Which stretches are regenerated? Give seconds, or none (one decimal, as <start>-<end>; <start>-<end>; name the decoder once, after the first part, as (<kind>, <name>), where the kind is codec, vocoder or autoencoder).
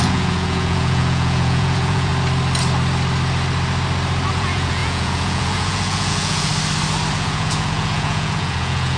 0.0-2.1 (vocoder, Vocos); 4.3-6.5; 7.1-9.0